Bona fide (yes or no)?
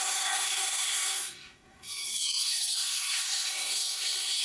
no